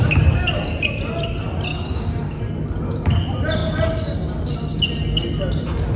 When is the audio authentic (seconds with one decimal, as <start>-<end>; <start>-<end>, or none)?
0.0-1.7; 2.4-6.0

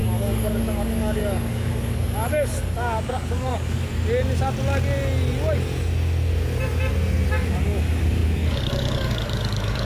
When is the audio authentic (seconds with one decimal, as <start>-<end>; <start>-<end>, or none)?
3.9-7.3

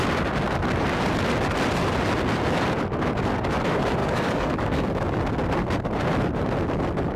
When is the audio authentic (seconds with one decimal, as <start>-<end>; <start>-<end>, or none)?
0.0-4.0; 5.2-7.2

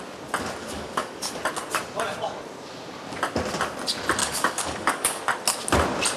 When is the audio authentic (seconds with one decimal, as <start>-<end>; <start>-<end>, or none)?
0.0-0.6; 1.4-4.2; 5.2-6.2

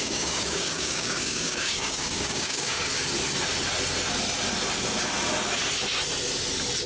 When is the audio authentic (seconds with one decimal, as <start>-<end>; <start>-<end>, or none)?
2.9-6.9

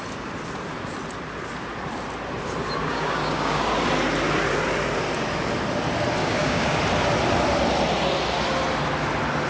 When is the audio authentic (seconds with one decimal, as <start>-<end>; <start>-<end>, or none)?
0.0-2.8; 3.6-6.2; 6.8-9.5

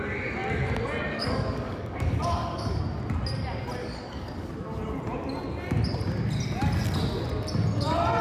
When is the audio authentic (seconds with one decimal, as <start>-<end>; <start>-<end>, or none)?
0.0-1.1; 2.8-3.8; 4.5-8.2

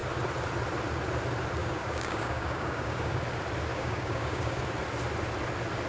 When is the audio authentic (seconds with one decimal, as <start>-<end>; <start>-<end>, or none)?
0.0-1.6; 3.2-3.7; 4.6-5.9